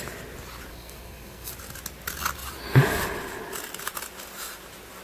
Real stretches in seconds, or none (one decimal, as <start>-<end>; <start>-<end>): 0.0-0.7; 1.5-5.0

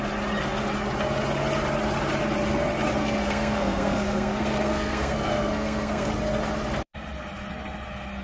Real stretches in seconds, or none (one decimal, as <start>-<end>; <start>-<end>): 0.0-3.0; 6.1-8.2

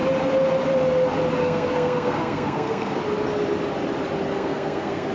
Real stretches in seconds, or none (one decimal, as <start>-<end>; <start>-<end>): 0.0-1.4; 3.0-4.3

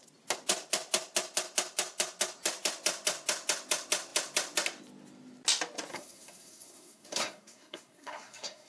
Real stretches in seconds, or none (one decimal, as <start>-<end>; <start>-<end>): 0.0-5.9